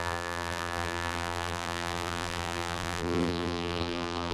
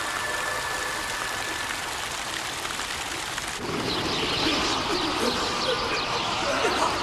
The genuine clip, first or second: second